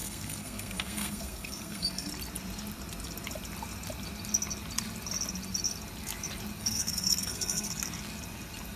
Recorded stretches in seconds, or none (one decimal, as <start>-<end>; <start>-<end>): 2.1-6.6; 7.7-8.8